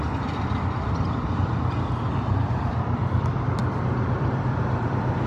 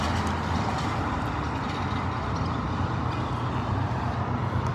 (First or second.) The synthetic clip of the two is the first